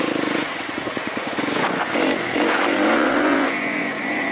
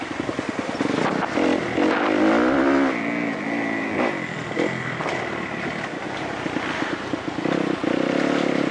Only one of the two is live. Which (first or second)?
second